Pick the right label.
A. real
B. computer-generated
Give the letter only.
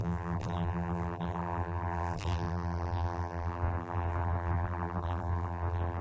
B